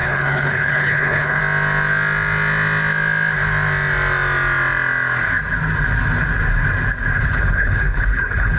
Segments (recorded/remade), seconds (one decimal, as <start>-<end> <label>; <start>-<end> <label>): 0.0-1.4 remade; 1.4-7.1 recorded; 7.1-8.6 remade